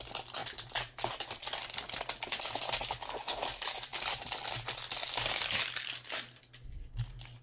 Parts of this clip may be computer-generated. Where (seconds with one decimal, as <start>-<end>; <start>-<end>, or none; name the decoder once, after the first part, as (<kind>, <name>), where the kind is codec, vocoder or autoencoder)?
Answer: none